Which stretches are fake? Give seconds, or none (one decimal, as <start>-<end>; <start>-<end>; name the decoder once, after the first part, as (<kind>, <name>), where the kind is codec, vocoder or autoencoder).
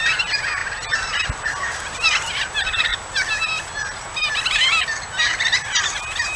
none